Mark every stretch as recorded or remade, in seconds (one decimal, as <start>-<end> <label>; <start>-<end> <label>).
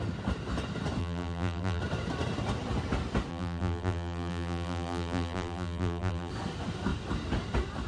0.0-1.0 recorded; 1.0-1.8 remade; 1.8-3.3 recorded; 3.3-6.3 remade; 6.3-7.9 recorded